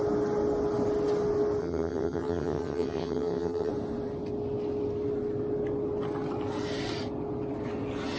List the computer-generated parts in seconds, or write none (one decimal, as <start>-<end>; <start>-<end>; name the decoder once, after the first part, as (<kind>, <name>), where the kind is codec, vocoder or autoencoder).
1.6-3.7 (vocoder, HiFi-GAN)